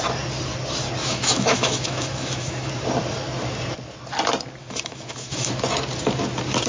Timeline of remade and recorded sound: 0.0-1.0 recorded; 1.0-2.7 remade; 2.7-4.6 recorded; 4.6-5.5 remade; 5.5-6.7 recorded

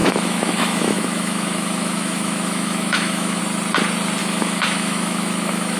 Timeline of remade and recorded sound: 0.0-3.4 remade; 3.4-4.2 recorded; 4.2-5.8 remade

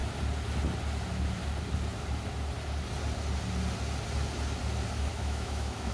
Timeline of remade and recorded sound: 0.0-5.1 recorded; 5.1-5.9 remade

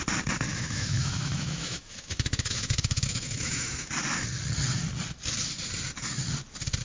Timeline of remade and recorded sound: 0.0-0.5 recorded; 0.5-3.9 remade; 3.9-6.8 recorded

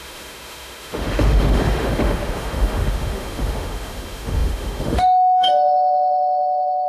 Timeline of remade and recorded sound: 0.0-6.9 remade

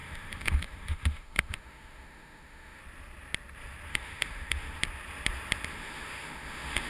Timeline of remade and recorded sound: 0.0-2.8 remade; 2.8-3.9 recorded; 3.9-4.8 remade; 4.8-5.7 recorded; 5.7-6.9 remade